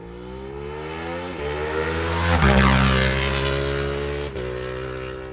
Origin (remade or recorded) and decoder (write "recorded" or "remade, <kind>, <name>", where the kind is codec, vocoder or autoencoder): recorded